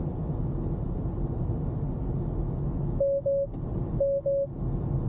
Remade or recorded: recorded